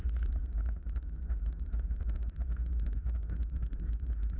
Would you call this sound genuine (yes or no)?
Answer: no